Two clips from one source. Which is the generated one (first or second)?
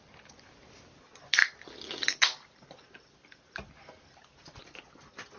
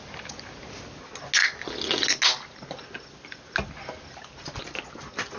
first